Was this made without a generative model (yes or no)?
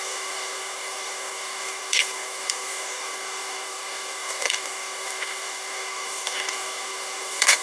no